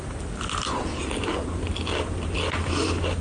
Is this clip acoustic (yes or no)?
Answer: yes